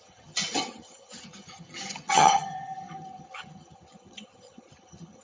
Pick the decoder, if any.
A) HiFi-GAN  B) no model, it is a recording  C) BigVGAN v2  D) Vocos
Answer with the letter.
A